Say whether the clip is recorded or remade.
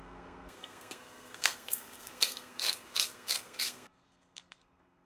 remade